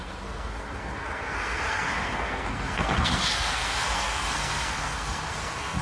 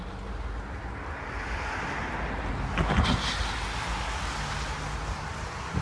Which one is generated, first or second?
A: first